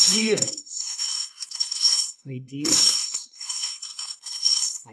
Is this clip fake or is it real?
fake